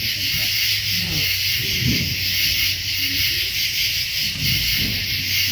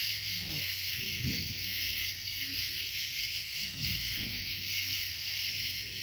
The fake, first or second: second